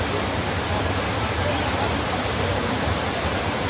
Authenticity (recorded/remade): recorded